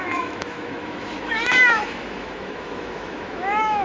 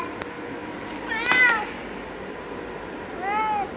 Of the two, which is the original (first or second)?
second